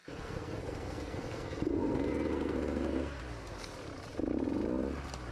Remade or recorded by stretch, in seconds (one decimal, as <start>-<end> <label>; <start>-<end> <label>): 0.0-3.2 remade; 3.2-5.3 recorded